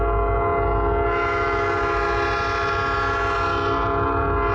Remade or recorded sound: recorded